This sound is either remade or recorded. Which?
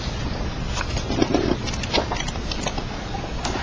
remade